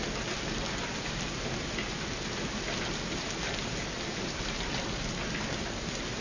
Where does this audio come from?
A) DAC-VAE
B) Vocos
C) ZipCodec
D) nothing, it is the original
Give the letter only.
D